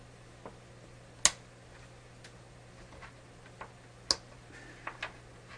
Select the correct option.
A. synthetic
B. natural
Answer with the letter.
B